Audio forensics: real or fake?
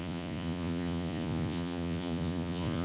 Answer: fake